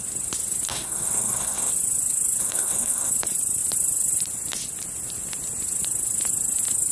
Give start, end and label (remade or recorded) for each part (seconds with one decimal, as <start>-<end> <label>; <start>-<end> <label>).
0.0-0.7 recorded; 0.7-1.7 remade; 1.7-2.4 recorded; 2.4-3.1 remade; 3.1-6.9 recorded